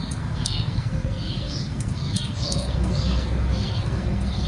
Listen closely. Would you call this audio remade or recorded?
remade